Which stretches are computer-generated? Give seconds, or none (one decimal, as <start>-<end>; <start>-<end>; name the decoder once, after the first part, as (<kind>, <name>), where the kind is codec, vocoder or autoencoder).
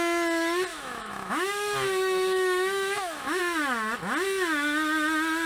0.7-3.4 (autoencoder, DAC-VAE)